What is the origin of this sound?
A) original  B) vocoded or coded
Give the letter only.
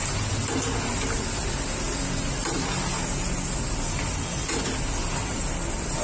A